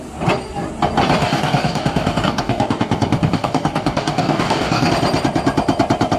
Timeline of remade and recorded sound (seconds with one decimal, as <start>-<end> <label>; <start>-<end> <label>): 0.0-1.2 recorded; 1.2-4.9 remade; 4.9-6.2 recorded